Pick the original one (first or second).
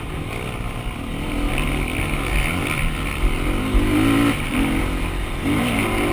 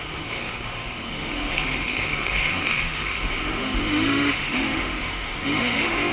first